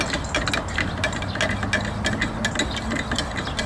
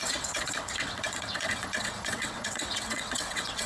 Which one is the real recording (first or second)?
first